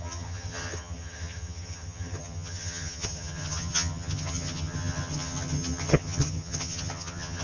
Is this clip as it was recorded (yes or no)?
no